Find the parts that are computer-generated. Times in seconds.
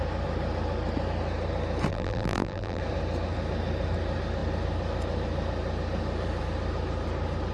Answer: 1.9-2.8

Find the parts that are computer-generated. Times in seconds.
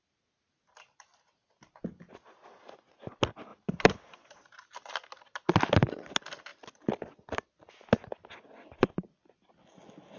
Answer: 3.5-5.5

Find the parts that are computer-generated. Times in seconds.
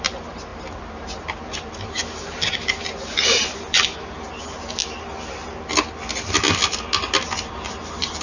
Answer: 0.0-4.8; 7.5-8.2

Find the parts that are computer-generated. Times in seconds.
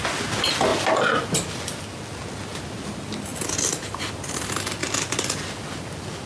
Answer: 3.3-4.1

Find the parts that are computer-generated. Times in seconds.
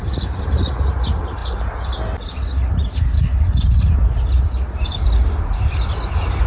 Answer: none